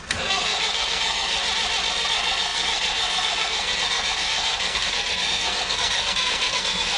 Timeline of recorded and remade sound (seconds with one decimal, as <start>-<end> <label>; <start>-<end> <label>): 0.0-1.4 remade; 1.4-1.9 recorded; 1.9-7.0 remade